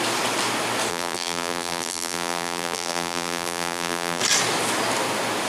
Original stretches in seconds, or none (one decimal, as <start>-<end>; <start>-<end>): 0.0-0.9; 4.2-5.5

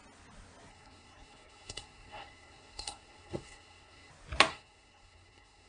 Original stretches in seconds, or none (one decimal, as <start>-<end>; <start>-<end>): 0.0-0.7; 4.1-4.5